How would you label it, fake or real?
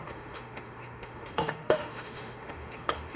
fake